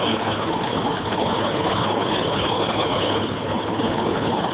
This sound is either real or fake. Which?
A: fake